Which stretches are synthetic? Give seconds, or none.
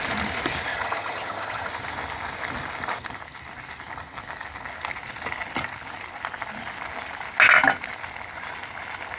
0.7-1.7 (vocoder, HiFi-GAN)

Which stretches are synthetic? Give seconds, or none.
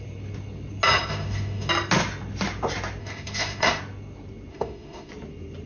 1.1-1.7 (autoencoder, DAC-VAE); 3.0-3.8; 4.5-5.1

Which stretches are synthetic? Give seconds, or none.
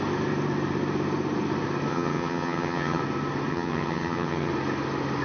1.9-3.0 (vocoder, HiFi-GAN); 3.5-4.5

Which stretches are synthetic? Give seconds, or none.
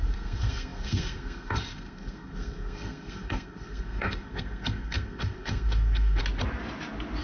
0.0-6.2 (codec, SNAC)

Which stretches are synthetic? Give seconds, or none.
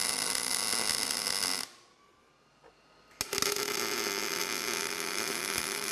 4.8-5.9 (autoencoder, DAC-VAE)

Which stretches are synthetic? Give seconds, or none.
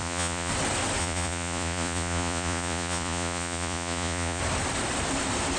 0.0-0.5 (vocoder, Vocos); 1.0-4.4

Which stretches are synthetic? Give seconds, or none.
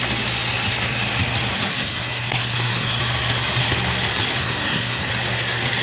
1.7-3.0 (codec, SNAC); 4.4-5.1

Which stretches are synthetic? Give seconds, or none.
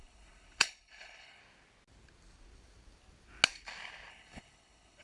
0.0-1.4 (codec, HILCodec); 4.1-5.0